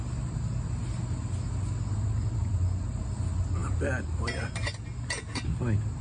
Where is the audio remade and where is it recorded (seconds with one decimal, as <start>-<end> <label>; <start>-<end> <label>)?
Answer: 0.0-3.6 recorded; 3.6-4.5 remade; 4.5-6.0 recorded